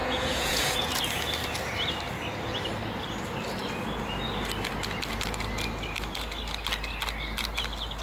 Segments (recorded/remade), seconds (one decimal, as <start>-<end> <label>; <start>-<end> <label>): 0.0-0.9 remade; 0.9-8.0 recorded